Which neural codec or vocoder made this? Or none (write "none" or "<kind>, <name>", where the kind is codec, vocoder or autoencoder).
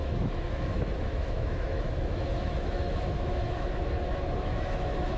autoencoder, DAC-VAE